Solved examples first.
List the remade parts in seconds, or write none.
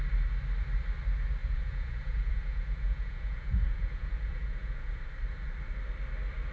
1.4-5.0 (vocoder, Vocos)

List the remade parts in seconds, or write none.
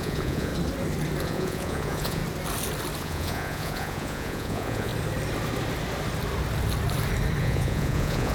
0.0-0.5 (vocoder, Vocos); 1.2-2.2; 3.0-4.9; 7.4-8.3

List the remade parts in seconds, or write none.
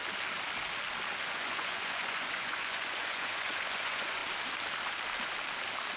1.2-4.2 (vocoder, Vocos)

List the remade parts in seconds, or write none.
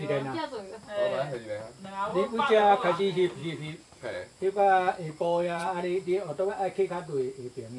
2.1-3.0 (vocoder, Vocos); 3.4-6.5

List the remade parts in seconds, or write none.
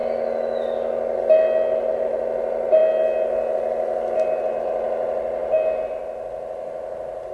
none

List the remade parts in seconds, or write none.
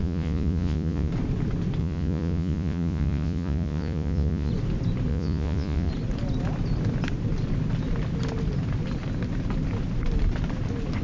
0.0-1.1 (vocoder, Vocos); 1.8-4.5; 5.1-5.9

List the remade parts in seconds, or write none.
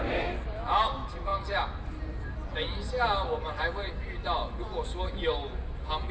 none